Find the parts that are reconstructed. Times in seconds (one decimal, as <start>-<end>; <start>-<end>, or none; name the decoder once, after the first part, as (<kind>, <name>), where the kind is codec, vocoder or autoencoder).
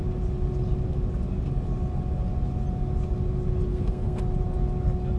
3.7-4.2 (codec, SNAC)